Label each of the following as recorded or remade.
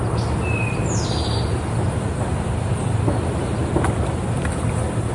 recorded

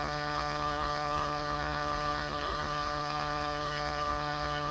remade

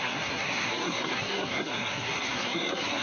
remade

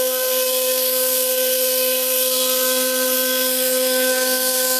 remade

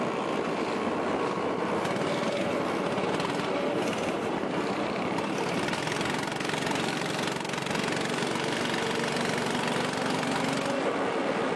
recorded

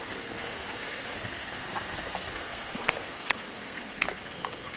remade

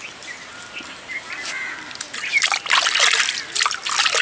recorded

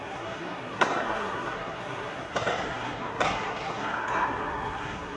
remade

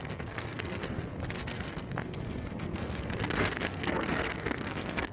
remade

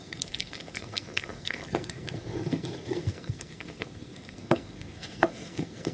remade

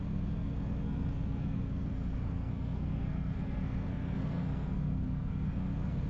remade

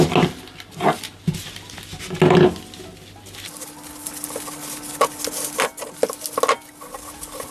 recorded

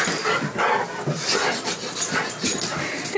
recorded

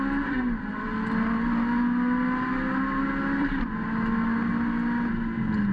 recorded